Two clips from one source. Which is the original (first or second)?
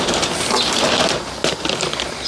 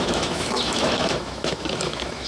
first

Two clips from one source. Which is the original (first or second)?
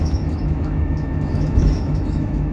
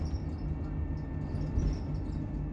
second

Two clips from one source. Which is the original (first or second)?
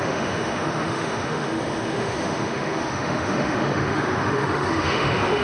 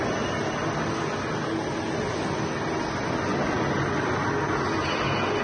second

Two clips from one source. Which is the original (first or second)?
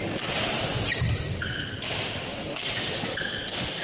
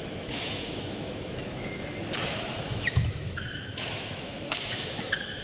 first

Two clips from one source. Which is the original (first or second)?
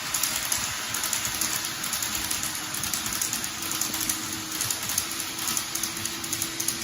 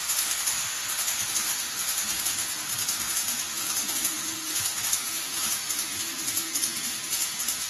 first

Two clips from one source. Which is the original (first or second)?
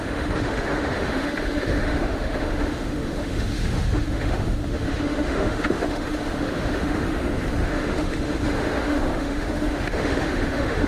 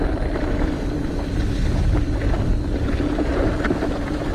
second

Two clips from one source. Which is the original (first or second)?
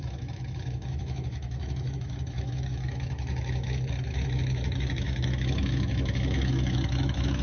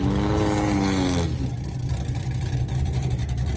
second